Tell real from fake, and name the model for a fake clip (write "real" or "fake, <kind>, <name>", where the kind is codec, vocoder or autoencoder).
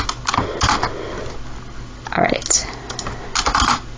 real